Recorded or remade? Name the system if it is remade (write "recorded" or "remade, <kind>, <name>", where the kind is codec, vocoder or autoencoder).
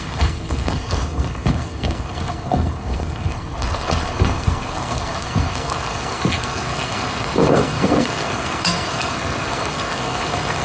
remade, codec, SNAC